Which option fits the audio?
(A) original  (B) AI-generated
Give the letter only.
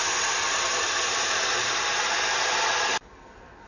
A